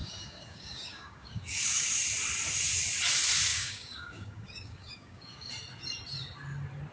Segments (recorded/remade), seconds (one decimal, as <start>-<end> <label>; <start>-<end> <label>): 0.0-1.9 remade; 1.9-3.5 recorded; 3.5-5.5 remade; 5.5-6.9 recorded

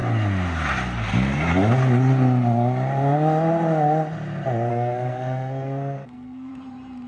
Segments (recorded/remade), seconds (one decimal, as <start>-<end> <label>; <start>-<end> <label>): 0.0-4.7 recorded; 4.7-6.5 remade; 6.5-7.1 recorded

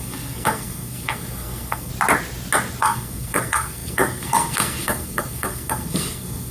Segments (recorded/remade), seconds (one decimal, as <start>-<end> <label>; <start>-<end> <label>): 0.0-1.9 remade; 1.9-2.8 recorded; 2.8-6.5 remade

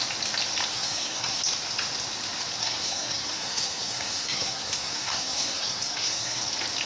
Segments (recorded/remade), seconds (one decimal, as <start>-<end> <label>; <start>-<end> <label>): 0.0-0.7 recorded; 0.7-1.4 remade; 1.4-2.6 recorded; 2.6-6.4 remade; 6.4-6.9 recorded